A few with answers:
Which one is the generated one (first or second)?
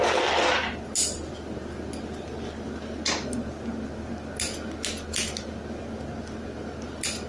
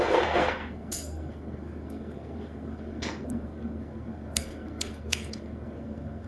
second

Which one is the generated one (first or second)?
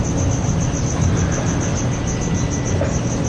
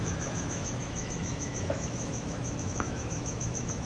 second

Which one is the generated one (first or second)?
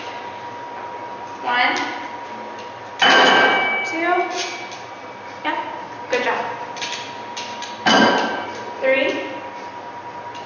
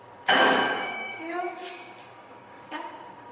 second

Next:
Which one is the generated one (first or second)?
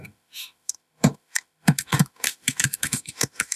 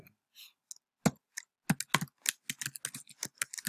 first